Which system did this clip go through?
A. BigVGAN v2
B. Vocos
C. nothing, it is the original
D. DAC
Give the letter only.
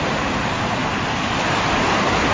C